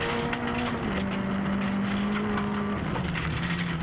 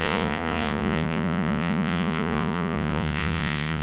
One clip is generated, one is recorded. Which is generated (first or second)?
second